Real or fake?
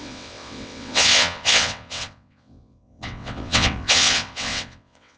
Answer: fake